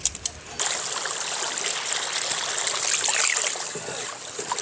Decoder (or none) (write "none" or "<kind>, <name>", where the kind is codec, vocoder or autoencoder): none